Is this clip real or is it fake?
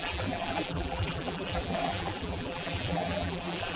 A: fake